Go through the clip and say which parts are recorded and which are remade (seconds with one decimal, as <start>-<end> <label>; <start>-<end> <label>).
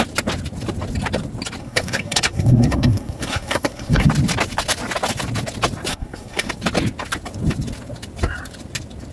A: 0.0-1.6 recorded; 1.6-4.1 remade; 4.1-5.9 recorded; 5.9-6.5 remade; 6.5-9.1 recorded